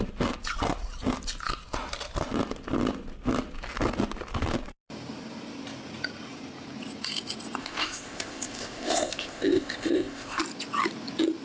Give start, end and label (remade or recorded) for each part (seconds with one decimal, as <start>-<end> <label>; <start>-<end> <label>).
0.0-7.6 recorded; 7.6-10.4 remade; 10.4-11.4 recorded